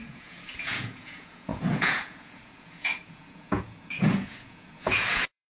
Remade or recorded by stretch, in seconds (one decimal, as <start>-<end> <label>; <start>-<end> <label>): 0.0-5.5 remade